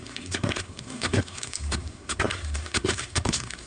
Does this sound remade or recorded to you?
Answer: remade